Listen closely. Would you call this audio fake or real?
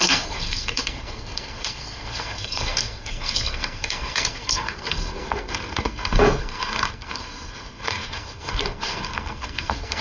fake